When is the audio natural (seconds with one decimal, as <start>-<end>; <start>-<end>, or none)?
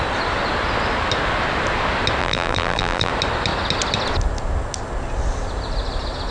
0.0-2.2; 3.1-6.3